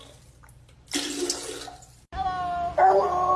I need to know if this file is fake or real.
real